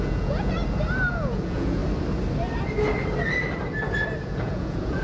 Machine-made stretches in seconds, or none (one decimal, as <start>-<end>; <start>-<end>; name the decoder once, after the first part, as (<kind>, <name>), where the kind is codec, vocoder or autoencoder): 0.0-0.6 (vocoder, Vocos); 1.1-1.8; 4.2-5.0